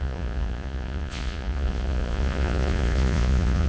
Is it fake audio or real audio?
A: fake